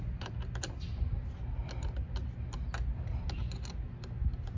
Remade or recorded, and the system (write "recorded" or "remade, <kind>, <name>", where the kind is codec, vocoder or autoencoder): recorded